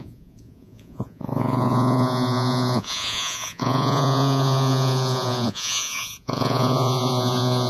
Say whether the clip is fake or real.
fake